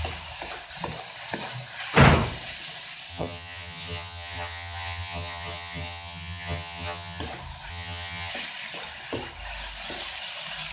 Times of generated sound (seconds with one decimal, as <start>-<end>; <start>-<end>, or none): 3.1-7.2; 7.7-8.3